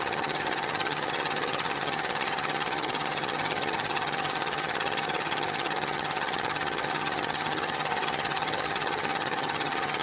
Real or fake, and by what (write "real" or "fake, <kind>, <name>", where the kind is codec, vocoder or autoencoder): fake, vocoder, HiFi-GAN